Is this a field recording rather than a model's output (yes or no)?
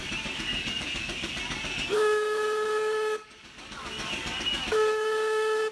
no